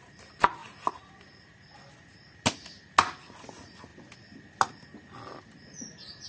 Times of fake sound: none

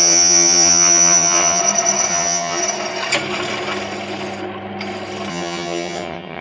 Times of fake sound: 0.0-1.6; 2.1-2.6; 5.3-6.4

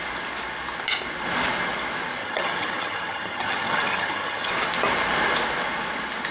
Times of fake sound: 2.2-4.5

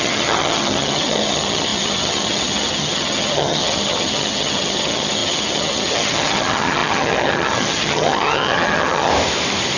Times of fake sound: 0.0-9.1

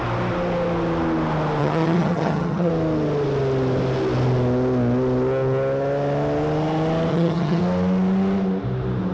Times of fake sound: 1.6-2.7; 7.1-7.6

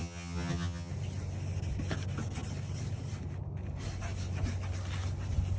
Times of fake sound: 0.0-0.9

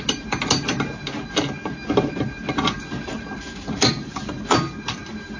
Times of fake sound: none